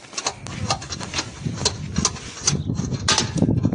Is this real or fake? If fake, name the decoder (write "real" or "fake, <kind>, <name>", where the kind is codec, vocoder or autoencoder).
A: real